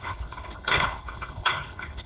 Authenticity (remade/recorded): remade